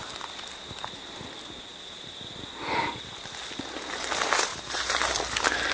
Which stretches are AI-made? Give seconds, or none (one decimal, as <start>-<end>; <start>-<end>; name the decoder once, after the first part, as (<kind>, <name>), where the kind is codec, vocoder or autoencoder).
0.0-0.6 (vocoder, BigVGAN v2)